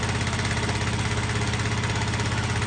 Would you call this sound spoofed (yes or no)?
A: no